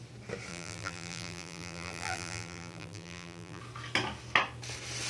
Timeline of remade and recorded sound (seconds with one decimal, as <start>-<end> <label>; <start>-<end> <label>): 0.0-0.5 recorded; 0.5-3.6 remade; 3.6-5.1 recorded